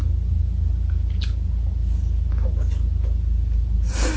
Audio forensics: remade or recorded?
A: recorded